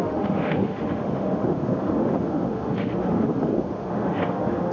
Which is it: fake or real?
fake